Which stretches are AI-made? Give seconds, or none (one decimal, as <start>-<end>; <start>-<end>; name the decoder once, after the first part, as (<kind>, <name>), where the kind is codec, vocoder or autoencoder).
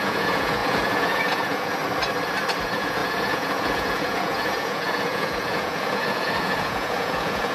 0.0-1.8 (vocoder, Vocos); 2.6-7.5